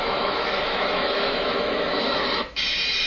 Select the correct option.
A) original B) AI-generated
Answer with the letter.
B